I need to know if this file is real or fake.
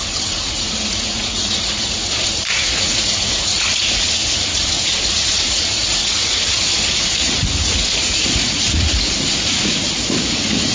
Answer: fake